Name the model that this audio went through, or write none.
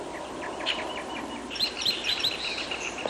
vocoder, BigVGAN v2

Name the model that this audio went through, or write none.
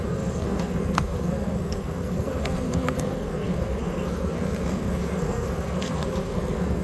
codec, SNAC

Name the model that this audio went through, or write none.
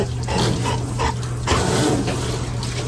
none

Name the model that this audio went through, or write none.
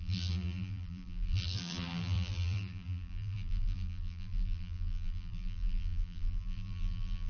vocoder, BigVGAN v2